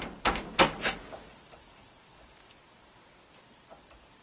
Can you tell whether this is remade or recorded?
recorded